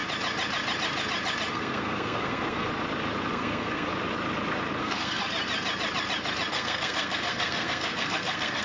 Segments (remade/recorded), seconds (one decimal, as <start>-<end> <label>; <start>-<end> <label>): 0.0-1.5 recorded; 1.5-2.7 remade; 2.7-3.3 recorded; 3.3-3.9 remade; 3.9-4.8 recorded; 4.8-5.2 remade; 5.2-6.5 recorded; 6.5-8.6 remade